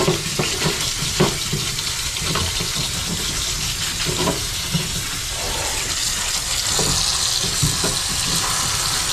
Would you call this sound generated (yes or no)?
no